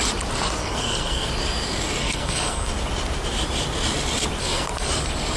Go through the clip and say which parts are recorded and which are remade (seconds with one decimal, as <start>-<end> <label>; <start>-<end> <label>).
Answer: 0.0-0.6 recorded; 0.6-1.3 remade; 1.3-2.0 recorded; 2.0-2.7 remade; 2.7-4.4 recorded; 4.4-4.9 remade; 4.9-5.4 recorded